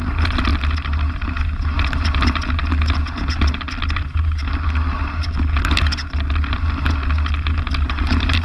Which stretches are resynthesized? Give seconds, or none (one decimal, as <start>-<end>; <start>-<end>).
0.0-0.5; 3.9-4.4; 7.8-8.4